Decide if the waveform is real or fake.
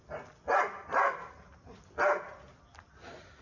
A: real